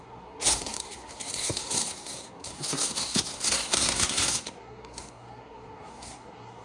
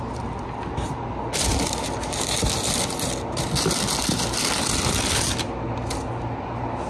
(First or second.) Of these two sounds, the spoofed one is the first